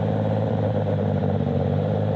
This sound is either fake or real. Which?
real